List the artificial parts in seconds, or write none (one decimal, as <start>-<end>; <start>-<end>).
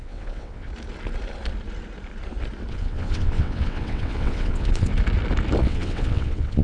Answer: 0.0-0.7; 2.7-4.9; 5.6-6.6